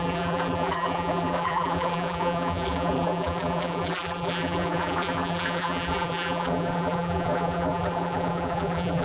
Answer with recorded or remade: remade